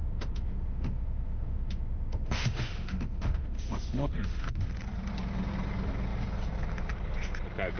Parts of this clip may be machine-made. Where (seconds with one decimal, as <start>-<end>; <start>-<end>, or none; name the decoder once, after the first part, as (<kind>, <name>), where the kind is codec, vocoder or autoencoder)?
0.0-4.7 (autoencoder, DAC-VAE)